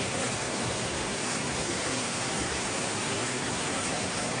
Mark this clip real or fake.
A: fake